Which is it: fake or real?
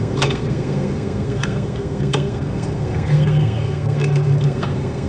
fake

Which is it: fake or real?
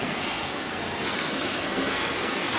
fake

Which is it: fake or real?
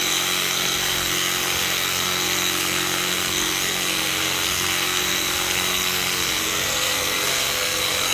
fake